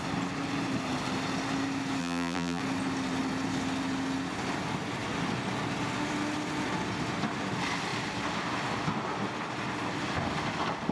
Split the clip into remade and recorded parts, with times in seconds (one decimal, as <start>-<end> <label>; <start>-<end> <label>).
0.0-2.0 recorded; 2.0-2.6 remade; 2.6-10.9 recorded